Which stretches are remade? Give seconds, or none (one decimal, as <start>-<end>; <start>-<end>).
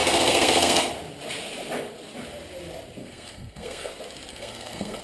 0.0-0.9; 3.0-3.9; 4.3-5.0